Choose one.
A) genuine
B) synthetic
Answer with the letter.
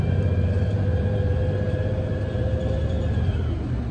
B